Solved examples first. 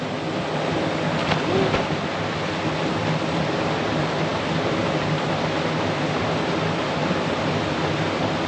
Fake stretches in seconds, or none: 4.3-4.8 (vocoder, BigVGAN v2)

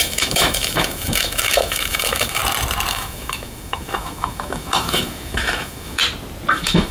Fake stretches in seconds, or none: 0.0-2.4 (autoencoder, DAC-VAE); 2.9-6.0; 6.5-6.9